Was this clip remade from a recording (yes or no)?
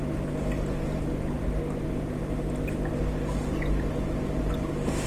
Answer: no